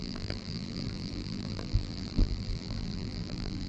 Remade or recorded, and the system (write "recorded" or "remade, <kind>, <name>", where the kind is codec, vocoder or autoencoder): remade, vocoder, BigVGAN v2